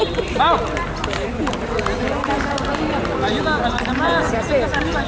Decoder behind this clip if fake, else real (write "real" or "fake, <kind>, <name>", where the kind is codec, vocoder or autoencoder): real